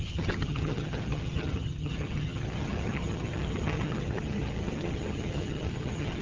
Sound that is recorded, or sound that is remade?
remade